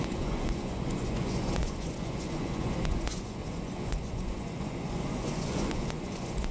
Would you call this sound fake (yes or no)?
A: yes